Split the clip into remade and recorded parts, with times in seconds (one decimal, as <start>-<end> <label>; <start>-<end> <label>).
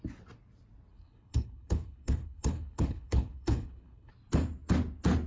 0.0-0.9 recorded; 0.9-4.1 remade; 4.1-5.3 recorded